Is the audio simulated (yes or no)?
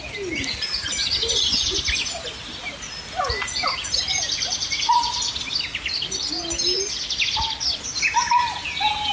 no